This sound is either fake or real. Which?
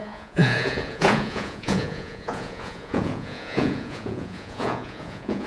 fake